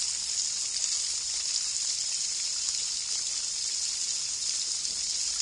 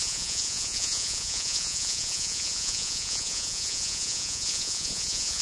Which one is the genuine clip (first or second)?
first